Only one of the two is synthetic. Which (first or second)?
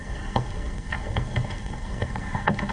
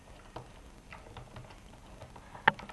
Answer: first